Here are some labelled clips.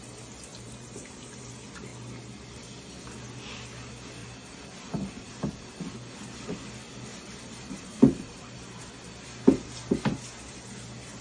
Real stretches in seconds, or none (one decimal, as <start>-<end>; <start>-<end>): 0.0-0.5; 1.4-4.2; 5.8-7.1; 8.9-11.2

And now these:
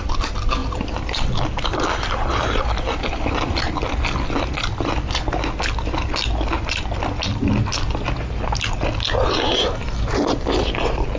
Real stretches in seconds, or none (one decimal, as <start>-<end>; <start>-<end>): 0.0-0.6; 3.8-11.2

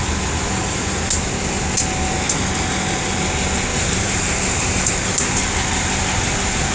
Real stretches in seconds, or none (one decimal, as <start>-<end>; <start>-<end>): 0.0-3.7; 4.9-6.7

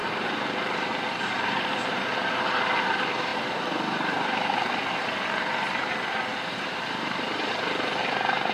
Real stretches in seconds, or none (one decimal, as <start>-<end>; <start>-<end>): 2.6-6.3; 7.5-8.5